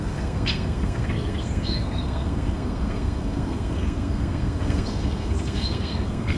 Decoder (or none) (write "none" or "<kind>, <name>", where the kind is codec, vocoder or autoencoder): codec, SNAC